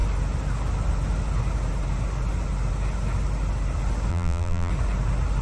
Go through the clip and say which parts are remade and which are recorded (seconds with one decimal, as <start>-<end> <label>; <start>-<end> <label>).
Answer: 0.0-4.1 recorded; 4.1-4.7 remade; 4.7-5.4 recorded